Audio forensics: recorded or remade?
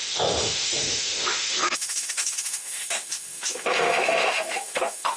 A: remade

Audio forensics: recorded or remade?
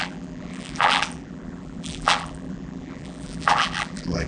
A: remade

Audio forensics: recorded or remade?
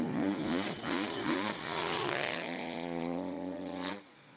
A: remade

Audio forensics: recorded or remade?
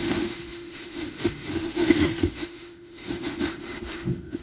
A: remade